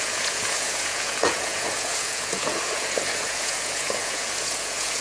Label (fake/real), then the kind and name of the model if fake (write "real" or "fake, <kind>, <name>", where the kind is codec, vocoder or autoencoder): fake, vocoder, Vocos